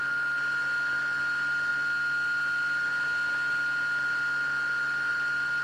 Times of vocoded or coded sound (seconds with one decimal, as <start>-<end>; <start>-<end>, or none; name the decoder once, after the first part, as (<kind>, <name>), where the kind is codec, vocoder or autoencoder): none

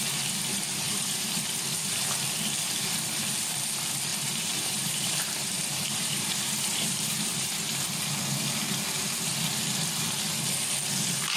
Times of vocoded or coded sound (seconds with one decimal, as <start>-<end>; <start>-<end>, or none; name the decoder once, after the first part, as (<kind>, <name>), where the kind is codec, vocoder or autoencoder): 0.5-1.3 (vocoder, BigVGAN v2); 4.1-7.6

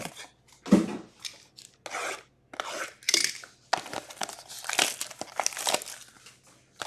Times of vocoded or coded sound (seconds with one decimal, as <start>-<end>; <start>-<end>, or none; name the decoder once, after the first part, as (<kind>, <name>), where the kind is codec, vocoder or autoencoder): none

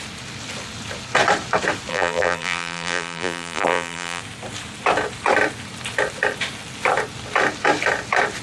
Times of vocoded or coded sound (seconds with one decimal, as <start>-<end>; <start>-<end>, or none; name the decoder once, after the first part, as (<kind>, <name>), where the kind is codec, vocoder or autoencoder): 1.9-4.2 (vocoder, BigVGAN v2)

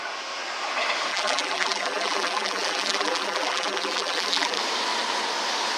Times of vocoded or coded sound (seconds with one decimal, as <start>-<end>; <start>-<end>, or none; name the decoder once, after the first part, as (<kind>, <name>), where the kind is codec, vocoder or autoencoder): 1.1-4.6 (vocoder, BigVGAN v2)

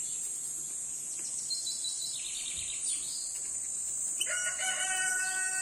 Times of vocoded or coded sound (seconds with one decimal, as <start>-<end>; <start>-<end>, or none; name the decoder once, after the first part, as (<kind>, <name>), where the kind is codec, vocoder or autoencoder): 0.9-1.4 (vocoder, BigVGAN v2); 2.0-5.1

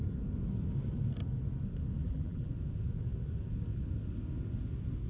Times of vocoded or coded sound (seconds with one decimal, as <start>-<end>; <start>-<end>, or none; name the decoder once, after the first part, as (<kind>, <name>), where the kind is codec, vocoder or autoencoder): 2.0-2.5 (vocoder, BigVGAN v2)